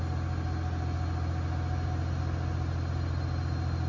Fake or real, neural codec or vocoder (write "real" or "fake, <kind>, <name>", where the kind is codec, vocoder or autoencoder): real